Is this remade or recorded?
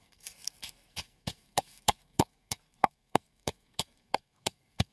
remade